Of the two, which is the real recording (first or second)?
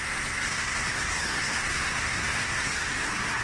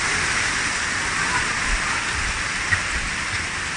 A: second